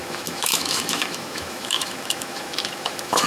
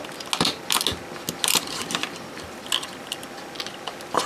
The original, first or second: second